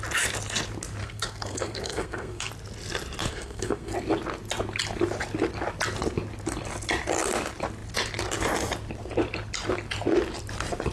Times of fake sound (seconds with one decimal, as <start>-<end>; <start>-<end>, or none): 1.0-2.5; 3.3-3.9